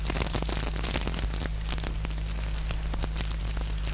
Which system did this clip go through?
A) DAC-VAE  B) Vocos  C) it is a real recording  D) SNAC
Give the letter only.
C